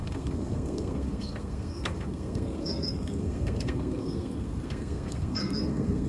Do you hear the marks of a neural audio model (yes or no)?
yes